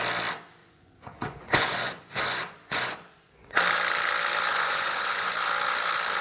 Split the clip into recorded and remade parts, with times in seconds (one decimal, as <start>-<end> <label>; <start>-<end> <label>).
0.0-0.6 recorded; 0.6-3.6 remade; 3.6-4.5 recorded; 4.5-5.3 remade; 5.3-6.2 recorded

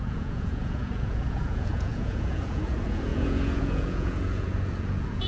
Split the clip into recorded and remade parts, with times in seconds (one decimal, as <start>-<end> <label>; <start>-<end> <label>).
0.0-5.3 remade

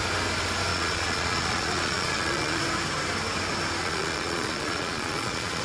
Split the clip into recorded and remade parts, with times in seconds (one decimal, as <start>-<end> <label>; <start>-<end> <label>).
0.0-0.7 recorded; 0.7-2.6 remade; 2.6-3.8 recorded; 3.8-5.6 remade

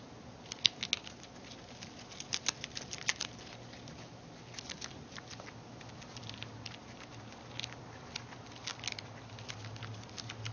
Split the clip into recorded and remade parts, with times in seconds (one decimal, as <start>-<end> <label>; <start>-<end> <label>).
0.0-10.5 recorded

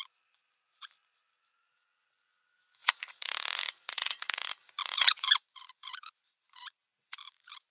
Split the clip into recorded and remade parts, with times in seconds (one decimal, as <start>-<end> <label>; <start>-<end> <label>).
0.0-7.7 remade

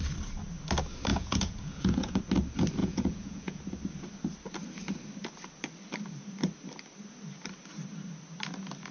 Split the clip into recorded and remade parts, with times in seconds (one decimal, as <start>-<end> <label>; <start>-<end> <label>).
0.0-1.1 recorded; 1.1-2.2 remade; 2.2-2.8 recorded; 2.8-3.6 remade; 3.6-8.9 recorded